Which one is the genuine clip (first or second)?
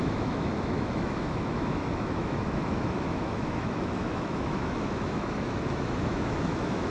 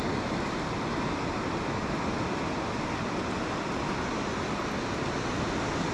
second